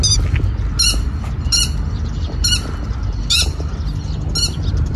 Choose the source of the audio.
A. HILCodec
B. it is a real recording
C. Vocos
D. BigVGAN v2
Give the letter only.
B